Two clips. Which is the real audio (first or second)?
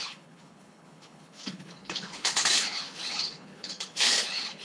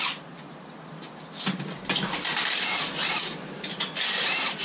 second